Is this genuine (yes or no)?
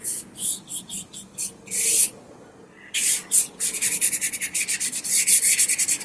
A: yes